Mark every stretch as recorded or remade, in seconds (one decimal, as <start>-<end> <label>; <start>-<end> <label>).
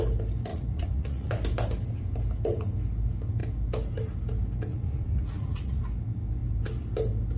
0.0-0.5 recorded; 0.5-1.3 remade; 1.3-4.7 recorded; 4.7-5.8 remade; 5.8-7.4 recorded